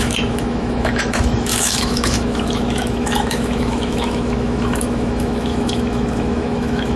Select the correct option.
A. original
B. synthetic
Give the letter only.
B